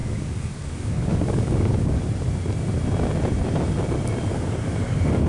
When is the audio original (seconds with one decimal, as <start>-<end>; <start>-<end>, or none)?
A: 2.0-4.3

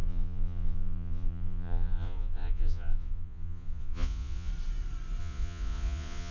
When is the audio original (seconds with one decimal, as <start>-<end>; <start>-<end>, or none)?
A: 4.5-5.2

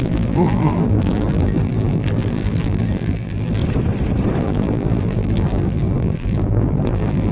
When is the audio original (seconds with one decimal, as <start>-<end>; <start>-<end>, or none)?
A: 3.6-4.4

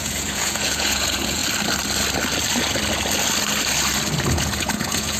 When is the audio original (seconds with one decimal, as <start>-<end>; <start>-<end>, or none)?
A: 1.4-4.3